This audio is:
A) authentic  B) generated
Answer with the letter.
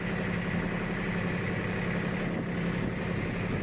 A